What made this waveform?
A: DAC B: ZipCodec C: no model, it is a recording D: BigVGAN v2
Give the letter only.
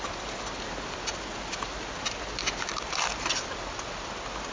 C